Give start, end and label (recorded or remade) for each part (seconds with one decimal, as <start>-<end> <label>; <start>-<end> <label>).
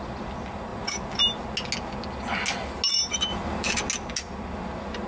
0.0-3.3 recorded; 3.3-3.9 remade; 3.9-5.1 recorded